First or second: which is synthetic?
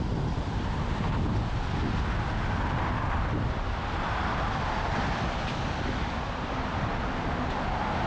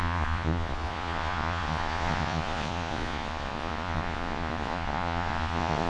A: second